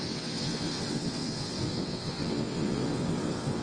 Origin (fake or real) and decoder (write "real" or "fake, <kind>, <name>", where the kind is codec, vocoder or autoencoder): fake, vocoder, WaveNeXt